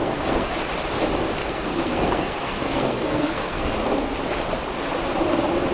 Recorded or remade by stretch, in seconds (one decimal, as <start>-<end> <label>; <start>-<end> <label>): 0.0-0.5 remade; 0.5-1.4 recorded; 1.4-3.7 remade; 3.7-5.7 recorded